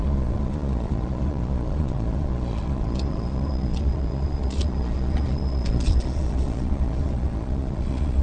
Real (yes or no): no